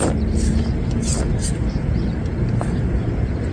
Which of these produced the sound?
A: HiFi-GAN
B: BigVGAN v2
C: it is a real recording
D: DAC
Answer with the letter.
C